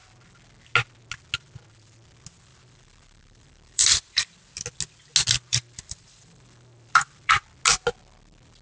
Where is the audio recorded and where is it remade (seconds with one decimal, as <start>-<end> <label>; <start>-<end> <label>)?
0.0-2.5 recorded; 2.5-4.4 remade; 4.4-5.5 recorded; 5.5-7.3 remade; 7.3-8.6 recorded